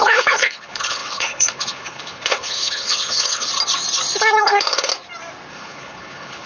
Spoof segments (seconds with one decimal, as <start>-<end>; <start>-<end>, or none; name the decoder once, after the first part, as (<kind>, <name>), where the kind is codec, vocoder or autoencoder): 0.0-3.5 (codec, HILCodec); 4.4-4.9; 5.5-6.5